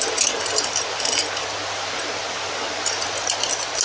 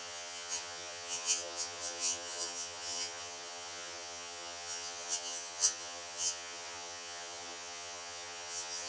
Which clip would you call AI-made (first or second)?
second